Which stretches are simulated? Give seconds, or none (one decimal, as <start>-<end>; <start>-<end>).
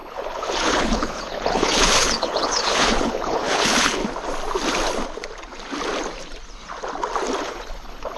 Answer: 0.0-4.0; 7.4-8.2